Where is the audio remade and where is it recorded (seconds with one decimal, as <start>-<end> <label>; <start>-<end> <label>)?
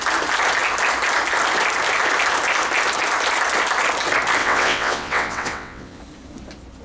0.0-4.4 recorded; 4.4-6.0 remade; 6.0-6.8 recorded